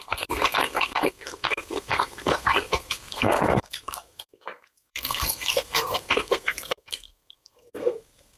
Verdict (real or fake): fake